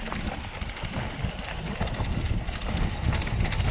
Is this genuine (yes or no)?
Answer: yes